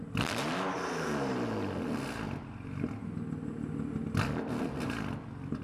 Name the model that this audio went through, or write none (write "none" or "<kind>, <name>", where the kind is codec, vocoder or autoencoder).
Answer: none